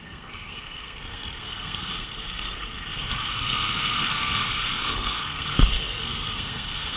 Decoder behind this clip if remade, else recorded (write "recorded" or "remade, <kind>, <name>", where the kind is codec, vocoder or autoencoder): remade, codec, SNAC